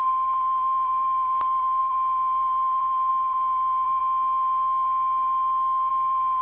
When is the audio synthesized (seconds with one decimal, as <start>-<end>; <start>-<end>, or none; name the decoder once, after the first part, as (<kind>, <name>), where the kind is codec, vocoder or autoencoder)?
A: 0.0-4.0 (vocoder, BigVGAN v2); 5.9-6.4